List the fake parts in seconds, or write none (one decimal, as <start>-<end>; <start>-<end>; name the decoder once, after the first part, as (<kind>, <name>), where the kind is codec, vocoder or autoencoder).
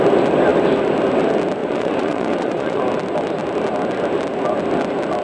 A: 1.6-2.8 (vocoder, Vocos)